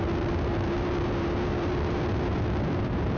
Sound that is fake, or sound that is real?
fake